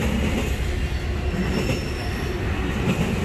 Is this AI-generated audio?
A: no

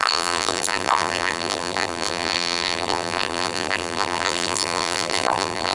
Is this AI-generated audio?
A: yes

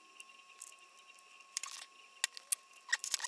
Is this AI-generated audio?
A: no